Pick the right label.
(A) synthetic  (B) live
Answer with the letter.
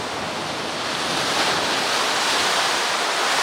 B